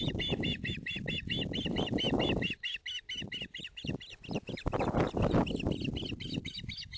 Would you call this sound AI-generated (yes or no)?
no